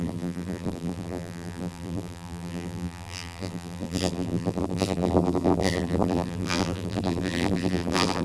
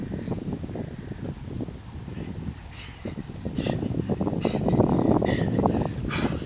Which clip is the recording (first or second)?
second